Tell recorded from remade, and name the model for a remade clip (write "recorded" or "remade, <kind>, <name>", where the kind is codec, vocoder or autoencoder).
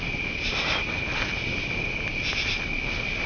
recorded